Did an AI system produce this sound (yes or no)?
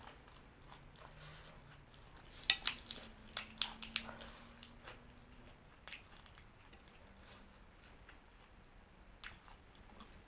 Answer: no